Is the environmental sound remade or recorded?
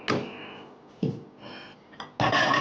recorded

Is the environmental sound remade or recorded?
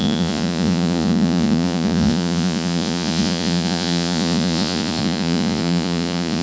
remade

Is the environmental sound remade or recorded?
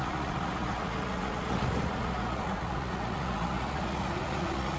remade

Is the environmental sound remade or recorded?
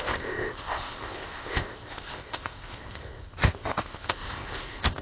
remade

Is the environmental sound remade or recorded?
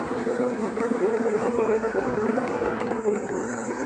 remade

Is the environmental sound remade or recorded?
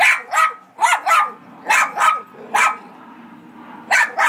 recorded